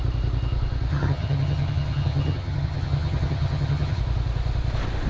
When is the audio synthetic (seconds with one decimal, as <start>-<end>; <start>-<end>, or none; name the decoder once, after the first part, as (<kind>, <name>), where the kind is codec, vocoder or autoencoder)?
0.9-4.0 (vocoder, HiFi-GAN)

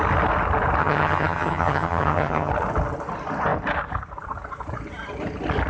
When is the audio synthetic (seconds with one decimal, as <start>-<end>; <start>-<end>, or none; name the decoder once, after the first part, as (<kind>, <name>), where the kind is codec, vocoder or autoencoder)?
0.8-2.5 (vocoder, HiFi-GAN)

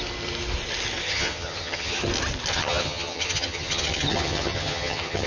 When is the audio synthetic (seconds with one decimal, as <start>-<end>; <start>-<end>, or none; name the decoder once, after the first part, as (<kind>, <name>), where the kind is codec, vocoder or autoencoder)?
1.0-2.1 (vocoder, HiFi-GAN); 2.5-5.3

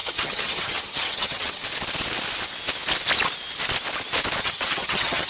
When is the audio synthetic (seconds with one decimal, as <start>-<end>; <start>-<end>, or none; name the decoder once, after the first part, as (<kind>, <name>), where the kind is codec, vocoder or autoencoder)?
0.0-1.6 (vocoder, HiFi-GAN); 4.4-5.3